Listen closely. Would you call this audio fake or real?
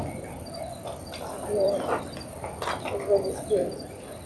fake